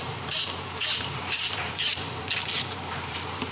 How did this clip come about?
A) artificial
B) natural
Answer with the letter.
A